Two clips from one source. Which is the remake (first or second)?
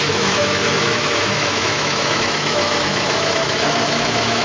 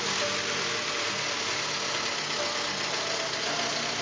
first